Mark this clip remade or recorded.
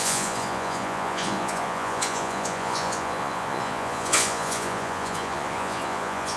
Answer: remade